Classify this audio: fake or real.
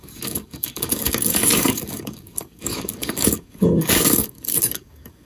fake